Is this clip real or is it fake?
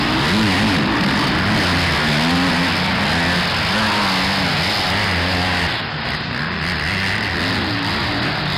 real